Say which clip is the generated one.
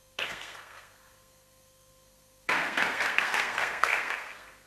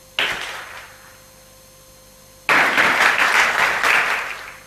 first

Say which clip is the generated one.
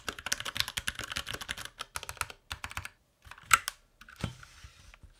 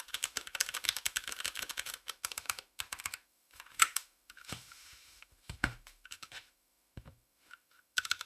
second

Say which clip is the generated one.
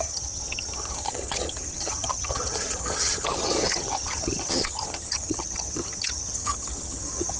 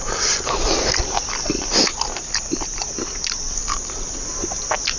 first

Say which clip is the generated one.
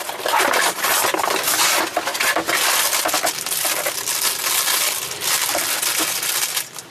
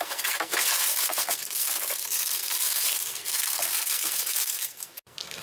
second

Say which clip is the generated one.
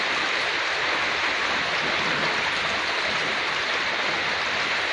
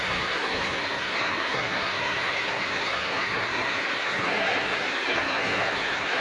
second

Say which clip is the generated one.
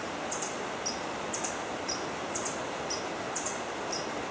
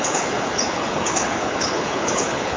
second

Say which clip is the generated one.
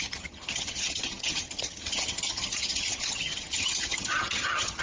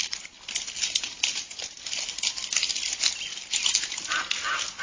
first